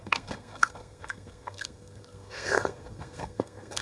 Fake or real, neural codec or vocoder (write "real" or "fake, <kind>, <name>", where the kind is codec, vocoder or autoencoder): fake, codec, SNAC